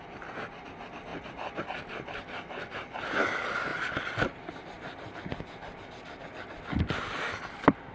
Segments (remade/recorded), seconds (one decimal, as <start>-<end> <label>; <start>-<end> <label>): 0.0-1.1 recorded; 1.1-1.6 remade; 1.6-7.9 recorded